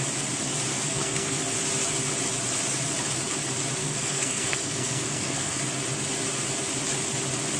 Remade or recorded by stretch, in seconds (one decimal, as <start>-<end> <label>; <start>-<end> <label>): 0.0-0.7 recorded; 0.7-1.4 remade; 1.4-3.8 recorded; 3.8-5.6 remade; 5.6-7.6 recorded